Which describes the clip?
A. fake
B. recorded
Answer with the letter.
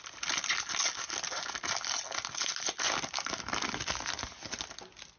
B